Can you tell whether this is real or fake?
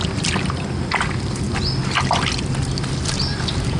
real